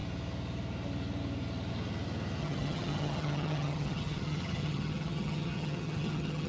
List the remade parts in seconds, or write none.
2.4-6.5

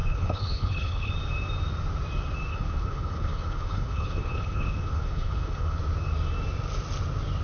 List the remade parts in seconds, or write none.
0.0-1.1; 2.5-5.8

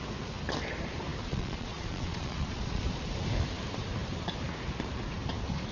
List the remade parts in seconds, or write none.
1.2-2.8

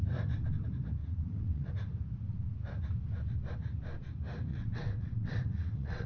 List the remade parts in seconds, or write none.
1.0-1.7; 4.5-6.1

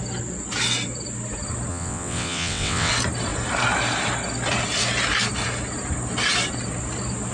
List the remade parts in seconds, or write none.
1.7-2.9